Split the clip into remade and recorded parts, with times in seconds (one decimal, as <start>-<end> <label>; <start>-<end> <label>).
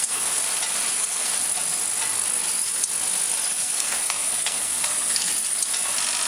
0.0-0.4 remade; 0.4-0.9 recorded; 0.9-1.3 remade; 1.3-3.5 recorded; 3.5-5.3 remade; 5.3-6.3 recorded